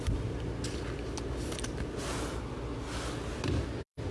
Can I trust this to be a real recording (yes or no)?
yes